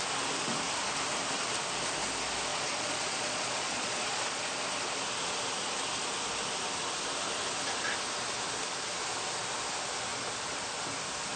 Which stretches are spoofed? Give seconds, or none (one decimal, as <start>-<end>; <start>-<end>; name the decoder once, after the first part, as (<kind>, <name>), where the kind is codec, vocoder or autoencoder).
2.5-4.4 (vocoder, Vocos)